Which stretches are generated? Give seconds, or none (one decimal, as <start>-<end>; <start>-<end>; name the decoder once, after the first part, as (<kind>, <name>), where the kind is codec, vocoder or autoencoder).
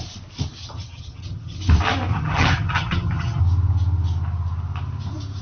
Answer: 0.6-1.6 (vocoder, HiFi-GAN); 2.1-3.4